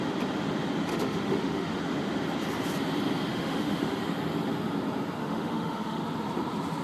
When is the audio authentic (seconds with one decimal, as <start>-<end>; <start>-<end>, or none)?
0.0-0.9; 1.8-3.3; 4.0-5.2; 6.0-6.8